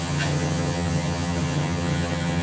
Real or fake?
fake